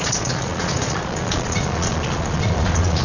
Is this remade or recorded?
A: remade